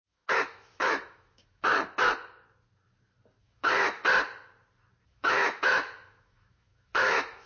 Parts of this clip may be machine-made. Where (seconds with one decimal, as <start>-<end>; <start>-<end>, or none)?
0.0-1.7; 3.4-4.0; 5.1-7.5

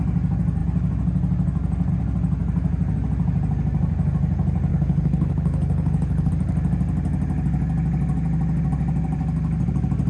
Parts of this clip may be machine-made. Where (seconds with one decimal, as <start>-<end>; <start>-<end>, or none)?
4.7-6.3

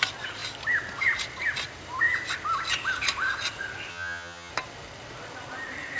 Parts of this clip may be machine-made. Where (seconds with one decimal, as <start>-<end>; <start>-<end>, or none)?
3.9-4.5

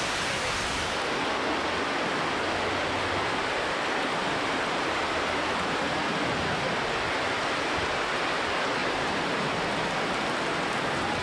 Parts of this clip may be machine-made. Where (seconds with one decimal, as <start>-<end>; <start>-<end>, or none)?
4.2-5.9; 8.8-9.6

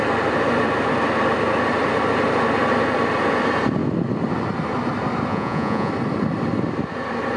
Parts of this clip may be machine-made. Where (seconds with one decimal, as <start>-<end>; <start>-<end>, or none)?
5.3-5.9